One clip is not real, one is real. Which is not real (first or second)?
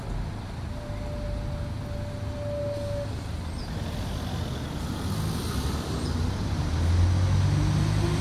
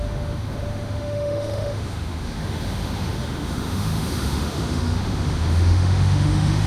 second